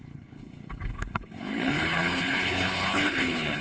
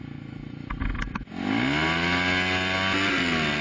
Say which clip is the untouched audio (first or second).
second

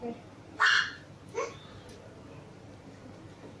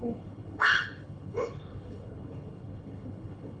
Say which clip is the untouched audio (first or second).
first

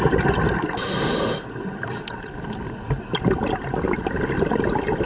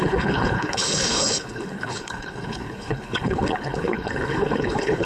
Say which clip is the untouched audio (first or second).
first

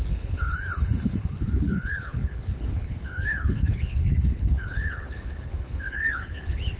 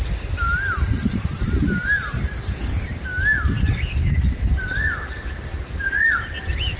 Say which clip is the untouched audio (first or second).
second